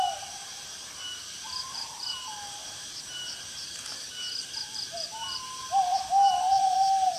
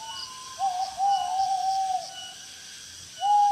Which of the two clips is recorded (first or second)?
second